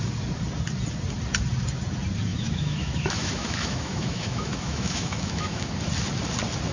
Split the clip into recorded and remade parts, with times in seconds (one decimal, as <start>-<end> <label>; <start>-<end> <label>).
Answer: 0.0-2.3 recorded; 2.3-5.7 remade; 5.7-6.7 recorded